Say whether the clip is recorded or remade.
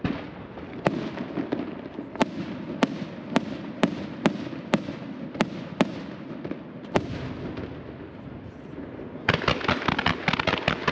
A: recorded